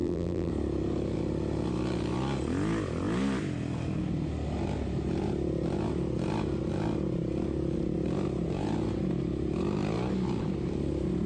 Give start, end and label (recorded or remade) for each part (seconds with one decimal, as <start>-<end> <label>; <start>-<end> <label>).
0.0-0.5 remade; 0.5-11.3 recorded